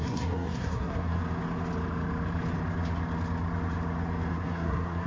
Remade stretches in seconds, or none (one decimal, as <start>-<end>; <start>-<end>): 0.0-1.2; 4.3-5.1